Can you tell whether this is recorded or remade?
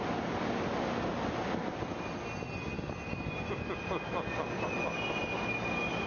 recorded